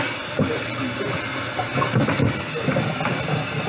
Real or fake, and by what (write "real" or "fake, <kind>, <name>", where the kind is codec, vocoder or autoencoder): real